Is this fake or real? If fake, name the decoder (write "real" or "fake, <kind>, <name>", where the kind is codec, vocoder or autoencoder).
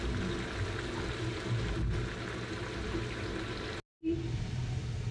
real